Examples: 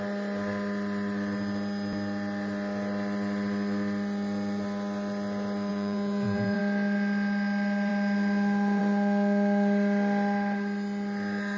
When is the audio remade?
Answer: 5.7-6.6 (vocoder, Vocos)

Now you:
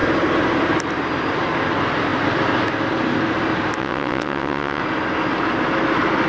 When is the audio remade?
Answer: 3.8-4.8 (vocoder, WaveNeXt)

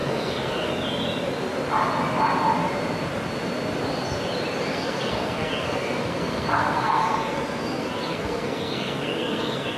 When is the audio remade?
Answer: 0.0-0.7 (codec, SNAC); 4.7-9.8

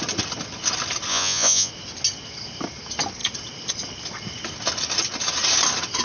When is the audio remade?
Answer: 1.1-1.7 (vocoder, Vocos)